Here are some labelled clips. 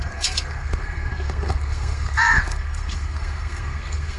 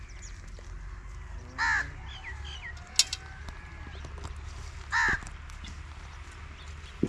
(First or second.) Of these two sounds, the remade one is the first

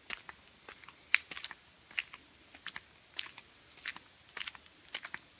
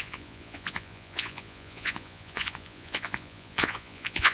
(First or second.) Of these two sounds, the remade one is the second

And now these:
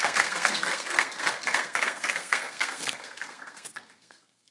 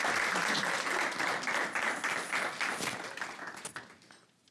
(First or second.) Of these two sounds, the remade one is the first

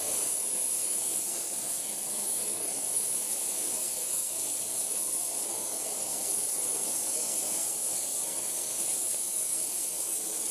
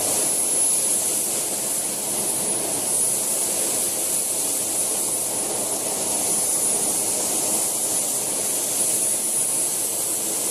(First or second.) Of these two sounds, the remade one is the first